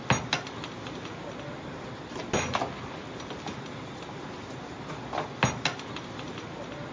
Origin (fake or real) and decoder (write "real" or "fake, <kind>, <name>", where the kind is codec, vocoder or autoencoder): real